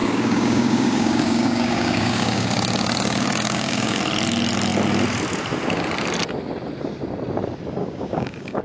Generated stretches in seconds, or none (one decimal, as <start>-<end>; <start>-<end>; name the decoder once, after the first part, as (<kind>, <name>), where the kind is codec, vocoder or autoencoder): 0.0-4.0 (codec, DAC); 7.8-8.6